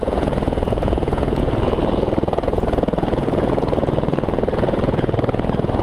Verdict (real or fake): fake